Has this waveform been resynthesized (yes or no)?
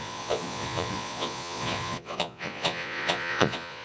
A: yes